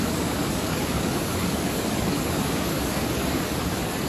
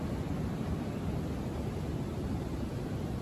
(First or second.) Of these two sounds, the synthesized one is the first